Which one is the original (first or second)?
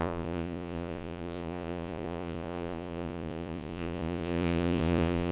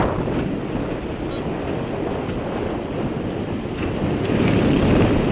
second